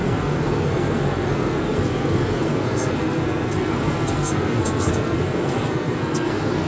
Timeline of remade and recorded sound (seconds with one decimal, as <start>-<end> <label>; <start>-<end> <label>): 0.0-6.7 remade